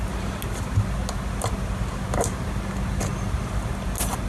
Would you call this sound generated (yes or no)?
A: no